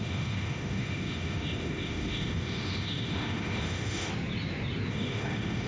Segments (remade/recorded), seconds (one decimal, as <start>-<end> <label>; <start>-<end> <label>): 0.0-4.1 remade; 4.1-4.9 recorded; 4.9-5.7 remade